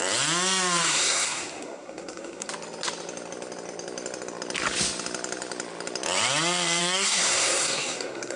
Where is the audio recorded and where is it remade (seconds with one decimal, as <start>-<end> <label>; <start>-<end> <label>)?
0.0-0.8 recorded; 0.8-2.5 remade; 2.5-6.8 recorded; 6.8-8.4 remade